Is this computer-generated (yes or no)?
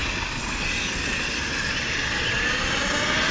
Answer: no